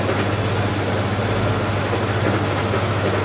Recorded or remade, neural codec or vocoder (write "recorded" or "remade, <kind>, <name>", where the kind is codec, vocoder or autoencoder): recorded